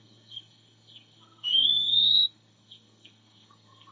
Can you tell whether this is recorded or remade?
remade